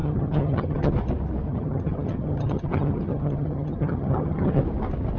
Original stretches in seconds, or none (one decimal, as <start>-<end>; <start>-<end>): 0.9-1.5; 4.6-5.2